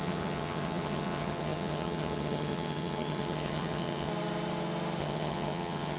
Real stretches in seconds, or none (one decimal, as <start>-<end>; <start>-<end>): 4.1-5.0